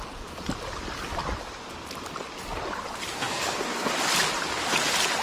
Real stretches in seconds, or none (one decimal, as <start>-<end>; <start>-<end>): 0.0-3.1; 3.9-5.2